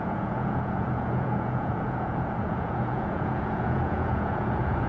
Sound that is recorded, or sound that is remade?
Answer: remade